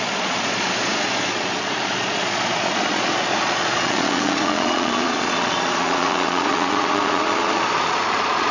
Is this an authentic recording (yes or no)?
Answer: no